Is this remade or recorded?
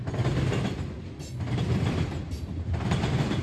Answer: recorded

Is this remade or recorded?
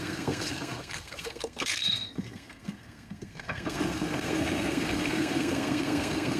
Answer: remade